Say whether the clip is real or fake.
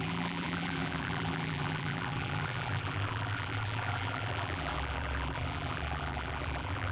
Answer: fake